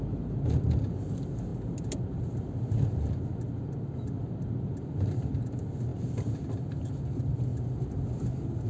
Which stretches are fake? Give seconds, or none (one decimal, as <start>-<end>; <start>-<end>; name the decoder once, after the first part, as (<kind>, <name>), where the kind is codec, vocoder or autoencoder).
none